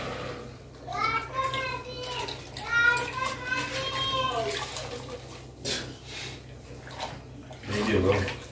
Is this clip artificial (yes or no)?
no